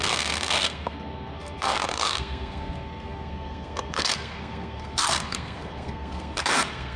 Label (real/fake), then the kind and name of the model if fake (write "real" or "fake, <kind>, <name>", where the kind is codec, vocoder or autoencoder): fake, codec, SNAC